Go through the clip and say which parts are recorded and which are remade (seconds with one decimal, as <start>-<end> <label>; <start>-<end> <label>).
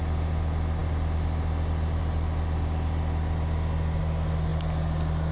0.0-5.3 recorded